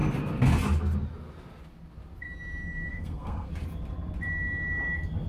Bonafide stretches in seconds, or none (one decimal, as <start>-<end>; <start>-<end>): 0.0-2.9; 3.5-5.3